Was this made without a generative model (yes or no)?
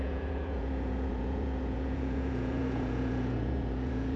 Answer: no